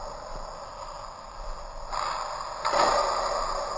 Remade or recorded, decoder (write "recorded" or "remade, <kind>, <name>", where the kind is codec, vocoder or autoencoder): recorded